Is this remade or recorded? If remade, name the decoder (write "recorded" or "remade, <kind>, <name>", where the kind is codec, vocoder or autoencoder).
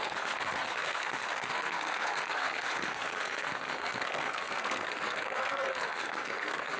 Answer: remade, codec, SNAC